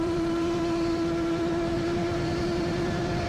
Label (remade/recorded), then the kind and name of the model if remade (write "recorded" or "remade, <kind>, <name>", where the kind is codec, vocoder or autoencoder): remade, vocoder, BigVGAN v2